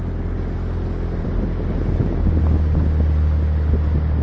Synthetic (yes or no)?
no